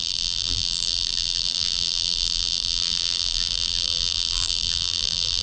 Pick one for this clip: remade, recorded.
remade